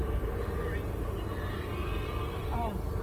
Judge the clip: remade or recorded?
recorded